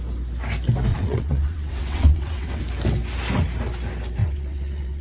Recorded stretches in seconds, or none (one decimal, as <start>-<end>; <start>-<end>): 0.0-0.9; 2.6-4.2